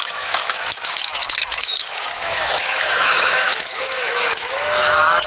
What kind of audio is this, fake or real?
fake